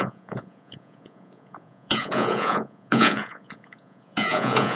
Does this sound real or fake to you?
fake